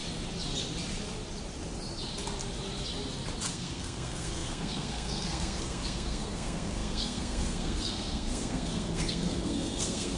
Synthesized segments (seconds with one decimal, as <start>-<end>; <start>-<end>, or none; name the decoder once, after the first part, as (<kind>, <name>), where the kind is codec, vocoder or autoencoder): 3.5-10.2 (codec, SNAC)